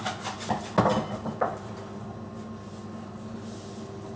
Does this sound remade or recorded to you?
recorded